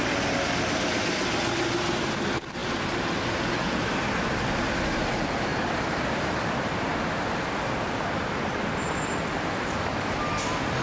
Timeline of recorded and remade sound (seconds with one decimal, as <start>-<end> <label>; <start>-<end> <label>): 0.0-10.8 recorded